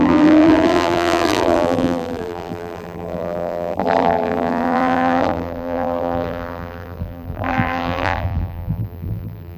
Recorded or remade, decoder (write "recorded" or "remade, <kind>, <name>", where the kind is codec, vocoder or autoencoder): remade, vocoder, BigVGAN v2